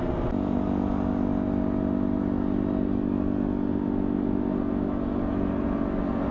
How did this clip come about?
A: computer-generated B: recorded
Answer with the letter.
B